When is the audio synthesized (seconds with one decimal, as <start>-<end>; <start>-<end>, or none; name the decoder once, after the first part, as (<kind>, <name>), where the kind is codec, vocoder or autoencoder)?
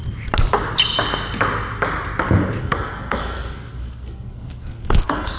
2.6-5.4 (codec, SNAC)